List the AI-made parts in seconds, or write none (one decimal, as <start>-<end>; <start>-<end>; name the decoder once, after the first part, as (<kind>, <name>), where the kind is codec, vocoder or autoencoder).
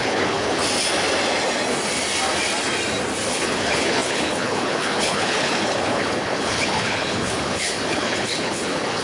0.0-0.6 (codec, HILCodec); 3.3-9.0